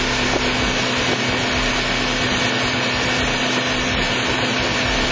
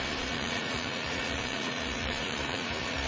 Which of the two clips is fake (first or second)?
second